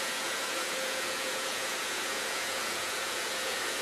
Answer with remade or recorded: remade